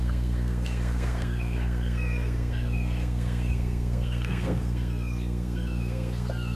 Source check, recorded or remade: remade